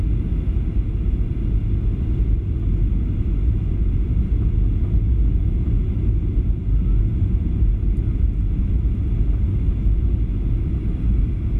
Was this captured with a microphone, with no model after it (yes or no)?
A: yes